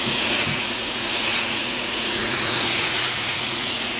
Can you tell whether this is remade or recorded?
remade